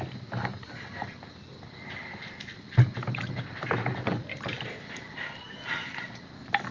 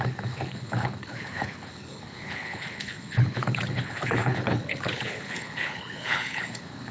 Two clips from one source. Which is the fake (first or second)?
second